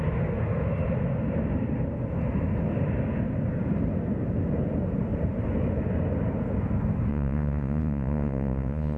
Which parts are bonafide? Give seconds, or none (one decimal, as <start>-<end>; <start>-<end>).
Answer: 0.0-7.1